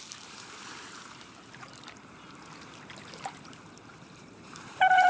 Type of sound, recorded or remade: remade